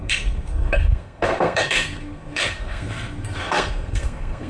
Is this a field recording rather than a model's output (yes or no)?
no